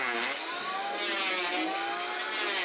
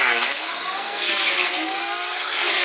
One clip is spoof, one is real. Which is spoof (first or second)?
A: second